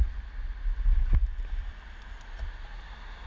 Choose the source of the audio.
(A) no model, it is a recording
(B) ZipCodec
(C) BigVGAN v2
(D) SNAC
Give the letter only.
A